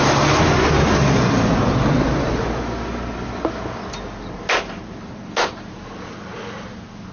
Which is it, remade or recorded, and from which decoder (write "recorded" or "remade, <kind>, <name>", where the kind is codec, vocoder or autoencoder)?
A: recorded